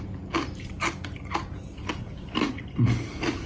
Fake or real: real